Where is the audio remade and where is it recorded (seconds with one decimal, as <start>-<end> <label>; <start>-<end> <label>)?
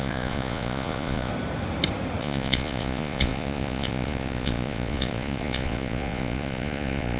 0.0-1.3 remade; 1.3-2.2 recorded; 2.2-7.2 remade